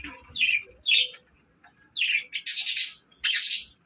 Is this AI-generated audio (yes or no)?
no